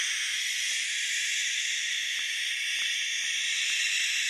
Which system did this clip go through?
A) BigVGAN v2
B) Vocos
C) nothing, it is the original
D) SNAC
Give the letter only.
C